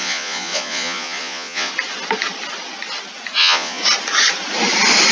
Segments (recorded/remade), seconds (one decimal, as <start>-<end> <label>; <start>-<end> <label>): 0.0-1.7 remade; 1.7-3.4 recorded; 3.4-3.8 remade; 3.8-5.1 recorded